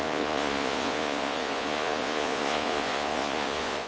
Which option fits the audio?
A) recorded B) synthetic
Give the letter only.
B